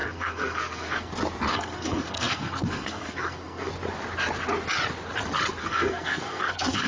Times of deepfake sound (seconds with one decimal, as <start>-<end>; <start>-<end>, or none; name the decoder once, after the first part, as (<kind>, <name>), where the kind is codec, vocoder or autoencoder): 0.0-1.1 (codec, SNAC); 1.5-3.7; 5.6-6.9